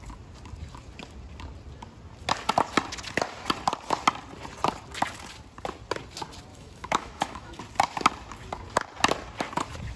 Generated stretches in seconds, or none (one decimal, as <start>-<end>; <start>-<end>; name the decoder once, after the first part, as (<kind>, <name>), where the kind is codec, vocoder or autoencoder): 6.5-7.6 (autoencoder, DAC-VAE)